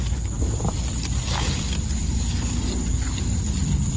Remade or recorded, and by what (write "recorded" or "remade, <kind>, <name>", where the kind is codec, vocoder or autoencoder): remade, vocoder, BigVGAN v2